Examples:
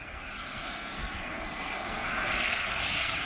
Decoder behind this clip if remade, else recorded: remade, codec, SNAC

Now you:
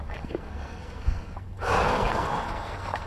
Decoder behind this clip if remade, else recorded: remade, codec, SNAC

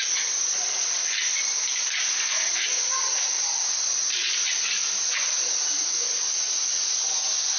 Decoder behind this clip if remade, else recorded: recorded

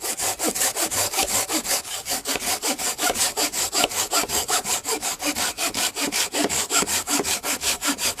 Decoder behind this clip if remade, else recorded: remade, codec, DAC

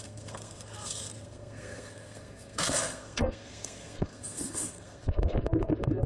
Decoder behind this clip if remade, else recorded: remade, codec, SNAC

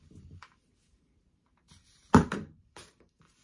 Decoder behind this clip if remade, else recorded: remade, vocoder, BigVGAN v2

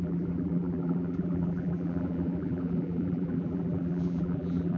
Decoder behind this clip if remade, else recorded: remade, vocoder, BigVGAN v2